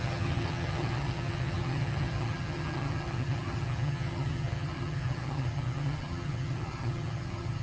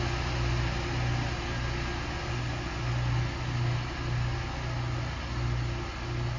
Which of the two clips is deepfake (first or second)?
first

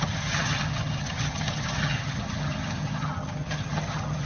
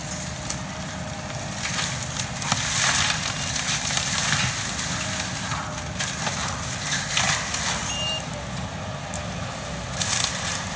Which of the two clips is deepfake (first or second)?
first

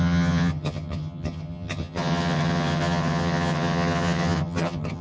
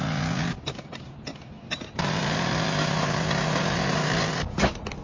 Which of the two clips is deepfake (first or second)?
first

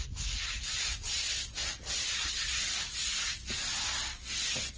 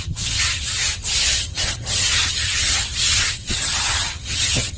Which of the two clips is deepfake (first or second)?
second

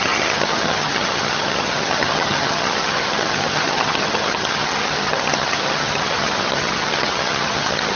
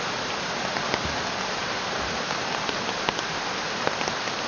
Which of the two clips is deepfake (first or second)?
first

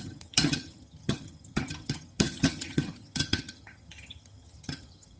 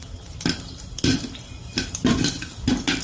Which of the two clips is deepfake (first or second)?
first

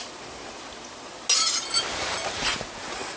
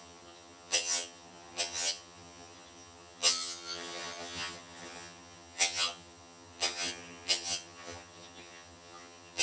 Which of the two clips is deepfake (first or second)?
second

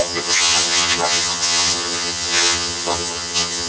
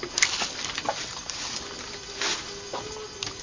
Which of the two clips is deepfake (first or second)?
first